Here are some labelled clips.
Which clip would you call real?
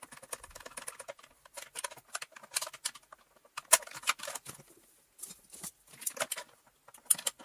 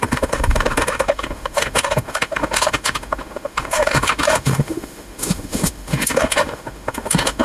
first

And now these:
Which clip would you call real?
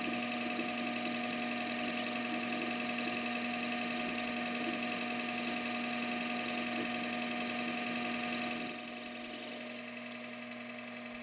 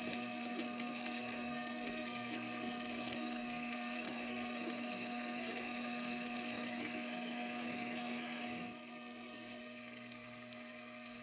first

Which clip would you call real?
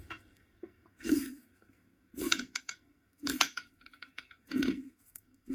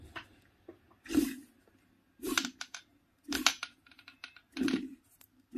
second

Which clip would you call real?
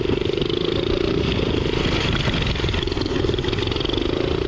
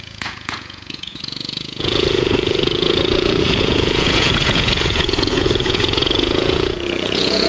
first